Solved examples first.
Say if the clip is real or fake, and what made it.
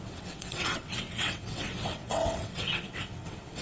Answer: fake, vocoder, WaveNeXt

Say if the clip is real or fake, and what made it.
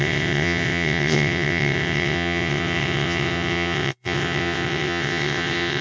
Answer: fake, vocoder, WaveNeXt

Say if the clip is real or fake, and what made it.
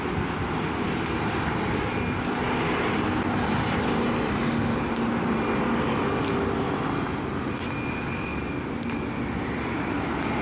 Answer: real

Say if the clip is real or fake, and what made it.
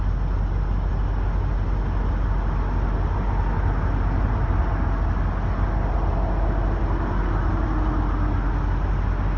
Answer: real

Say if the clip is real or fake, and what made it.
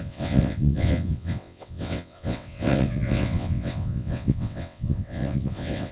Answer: fake, vocoder, WaveNeXt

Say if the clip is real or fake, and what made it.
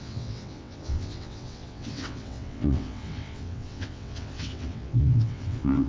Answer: fake, vocoder, WaveNeXt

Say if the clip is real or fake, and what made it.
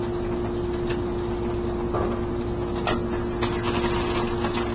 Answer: real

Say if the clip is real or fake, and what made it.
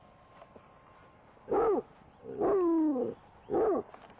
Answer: real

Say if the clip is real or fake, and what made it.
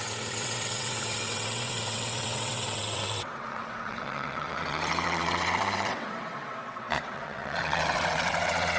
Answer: fake, vocoder, WaveNeXt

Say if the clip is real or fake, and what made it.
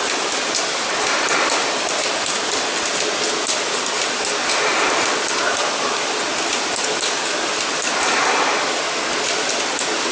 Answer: real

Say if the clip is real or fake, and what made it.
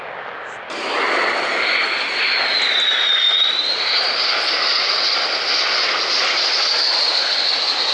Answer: real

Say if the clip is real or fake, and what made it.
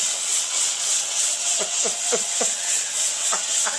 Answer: fake, vocoder, WaveNeXt